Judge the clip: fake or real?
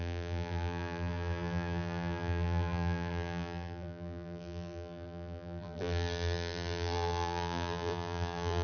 fake